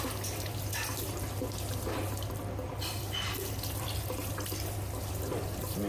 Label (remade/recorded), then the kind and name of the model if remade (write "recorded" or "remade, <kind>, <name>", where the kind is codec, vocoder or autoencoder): recorded